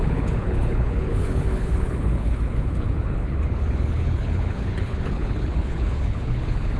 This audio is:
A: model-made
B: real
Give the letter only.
A